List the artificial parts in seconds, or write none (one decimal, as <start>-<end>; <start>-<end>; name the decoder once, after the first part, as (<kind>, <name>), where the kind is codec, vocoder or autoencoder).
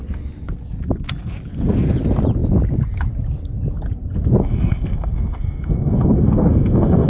4.4-7.1 (codec, SNAC)